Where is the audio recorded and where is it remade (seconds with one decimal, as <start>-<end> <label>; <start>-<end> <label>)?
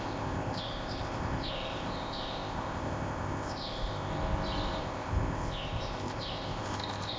0.0-4.1 remade; 4.1-4.8 recorded; 4.8-7.2 remade